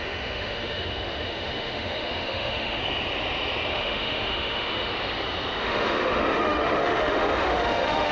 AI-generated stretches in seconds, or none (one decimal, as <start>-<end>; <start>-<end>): 0.0-2.8; 3.7-4.9; 5.6-8.1